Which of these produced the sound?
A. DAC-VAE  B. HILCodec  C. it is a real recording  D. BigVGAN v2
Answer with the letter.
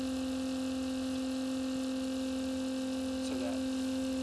C